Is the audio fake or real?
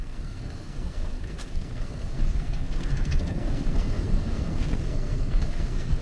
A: fake